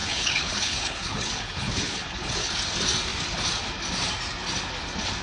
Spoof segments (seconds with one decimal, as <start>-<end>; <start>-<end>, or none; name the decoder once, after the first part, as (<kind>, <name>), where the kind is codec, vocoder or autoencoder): 0.0-2.5 (codec, HILCodec)